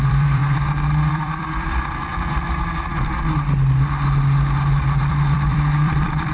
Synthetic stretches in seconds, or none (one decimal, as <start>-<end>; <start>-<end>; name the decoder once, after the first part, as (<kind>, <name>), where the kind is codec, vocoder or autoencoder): 0.0-0.4 (vocoder, BigVGAN v2); 1.1-2.1; 5.0-6.3